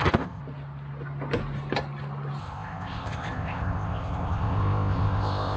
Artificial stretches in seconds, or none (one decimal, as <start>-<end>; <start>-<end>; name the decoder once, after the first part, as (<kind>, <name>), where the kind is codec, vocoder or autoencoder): 0.0-0.4 (codec, ZipCodec); 2.4-5.6